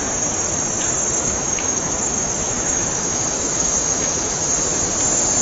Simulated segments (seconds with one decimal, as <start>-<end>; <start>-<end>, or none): 1.2-4.4